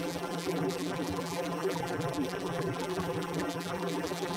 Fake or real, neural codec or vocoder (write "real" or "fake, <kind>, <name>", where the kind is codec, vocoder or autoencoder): fake, vocoder, BigVGAN v2